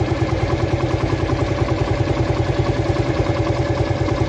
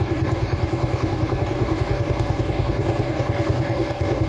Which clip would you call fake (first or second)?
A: second